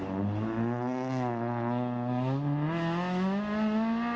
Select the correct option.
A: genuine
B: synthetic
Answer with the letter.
A